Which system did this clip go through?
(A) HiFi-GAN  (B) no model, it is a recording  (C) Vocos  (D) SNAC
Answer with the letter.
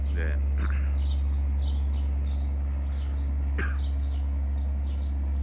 B